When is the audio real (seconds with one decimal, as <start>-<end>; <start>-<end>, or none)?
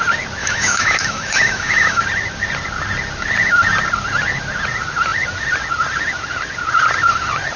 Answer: 0.0-0.4; 2.0-7.6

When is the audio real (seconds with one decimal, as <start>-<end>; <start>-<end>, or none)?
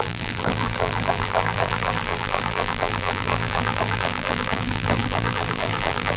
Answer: none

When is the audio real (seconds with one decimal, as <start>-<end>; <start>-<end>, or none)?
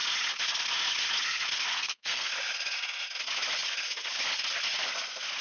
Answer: 0.0-1.7; 2.3-5.4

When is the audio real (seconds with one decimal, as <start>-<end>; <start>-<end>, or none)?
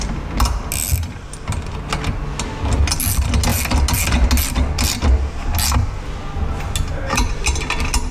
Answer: 0.0-8.1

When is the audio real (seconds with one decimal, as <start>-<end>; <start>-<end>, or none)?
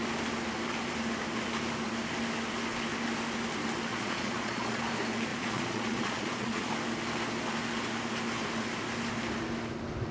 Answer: 0.0-3.9; 4.8-5.3; 6.7-10.1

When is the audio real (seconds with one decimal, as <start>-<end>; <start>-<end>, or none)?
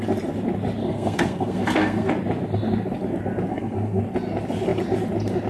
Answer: 0.0-0.8; 2.1-3.5; 4.0-5.5